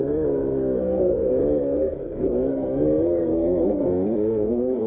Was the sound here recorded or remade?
remade